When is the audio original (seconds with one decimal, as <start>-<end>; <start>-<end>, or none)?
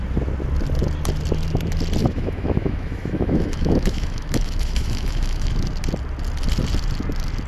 0.0-2.0; 5.5-7.5